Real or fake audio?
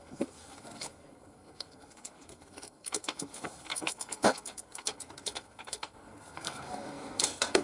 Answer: fake